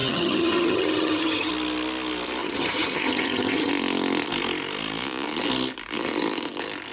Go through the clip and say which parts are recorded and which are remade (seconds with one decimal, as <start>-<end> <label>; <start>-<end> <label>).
0.0-1.5 remade; 1.5-2.4 recorded; 2.4-3.7 remade; 3.7-6.9 recorded